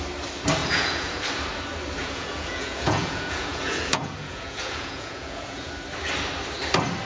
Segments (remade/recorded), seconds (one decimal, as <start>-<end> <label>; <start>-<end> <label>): 0.0-0.6 recorded; 0.6-1.2 remade; 1.2-2.0 recorded; 2.0-5.7 remade; 5.7-7.1 recorded